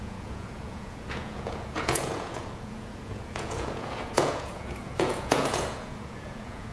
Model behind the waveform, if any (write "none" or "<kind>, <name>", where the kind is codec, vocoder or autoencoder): vocoder, Vocos